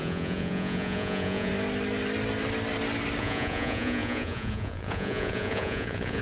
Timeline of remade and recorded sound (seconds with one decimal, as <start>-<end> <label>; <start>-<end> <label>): 0.0-1.5 remade; 1.5-3.2 recorded; 3.2-6.2 remade